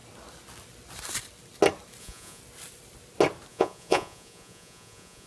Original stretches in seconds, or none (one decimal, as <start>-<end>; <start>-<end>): 0.0-2.0; 2.4-3.5

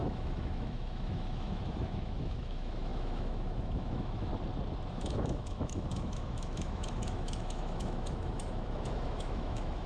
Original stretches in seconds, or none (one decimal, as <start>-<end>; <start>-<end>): 4.3-4.9

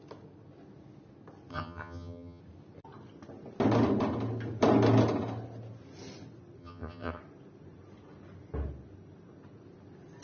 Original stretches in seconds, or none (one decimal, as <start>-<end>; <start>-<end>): 0.0-1.5; 2.4-6.6; 7.2-10.2

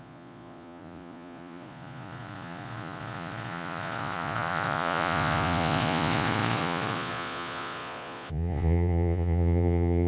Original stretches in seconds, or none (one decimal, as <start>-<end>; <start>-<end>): none

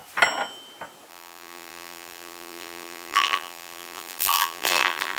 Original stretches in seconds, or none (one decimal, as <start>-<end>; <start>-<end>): 0.0-1.1